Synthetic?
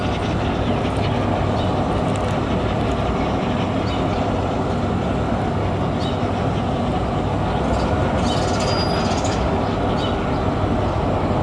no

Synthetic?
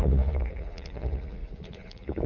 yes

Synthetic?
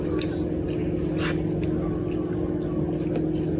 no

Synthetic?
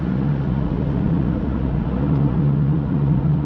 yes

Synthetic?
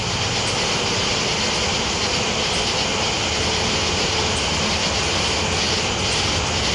no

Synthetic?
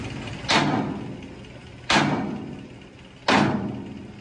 no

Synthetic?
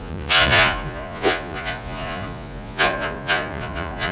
yes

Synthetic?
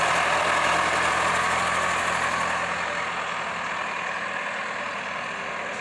no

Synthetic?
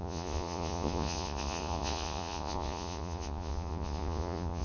yes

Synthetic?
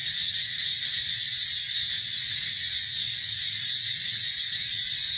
yes